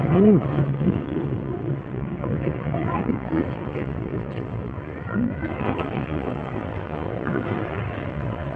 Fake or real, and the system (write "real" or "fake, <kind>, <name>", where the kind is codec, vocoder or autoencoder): fake, vocoder, WaveNeXt